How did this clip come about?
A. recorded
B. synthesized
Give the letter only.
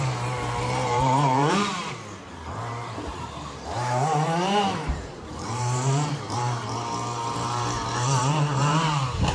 B